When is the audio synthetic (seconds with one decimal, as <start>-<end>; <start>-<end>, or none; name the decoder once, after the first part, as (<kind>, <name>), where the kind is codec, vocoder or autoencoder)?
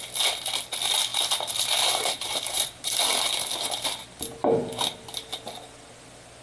1.1-3.0 (vocoder, BigVGAN v2)